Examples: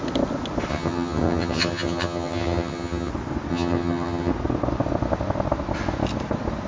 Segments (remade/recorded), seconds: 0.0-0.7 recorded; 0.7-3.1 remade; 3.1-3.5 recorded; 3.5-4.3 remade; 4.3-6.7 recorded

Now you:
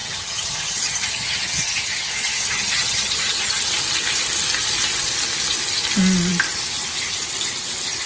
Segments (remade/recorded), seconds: 0.0-3.6 remade; 3.6-8.1 recorded

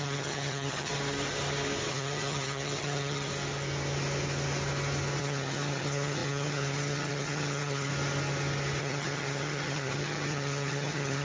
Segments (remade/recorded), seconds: 0.0-0.9 remade; 0.9-1.9 recorded; 1.9-3.3 remade; 3.3-5.2 recorded; 5.2-7.9 remade; 7.9-8.8 recorded; 8.8-11.2 remade